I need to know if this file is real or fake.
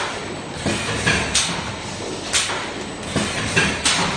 real